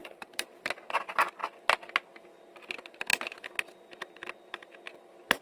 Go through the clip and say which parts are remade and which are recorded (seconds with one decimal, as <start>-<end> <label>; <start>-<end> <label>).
0.0-0.8 remade; 0.8-5.4 recorded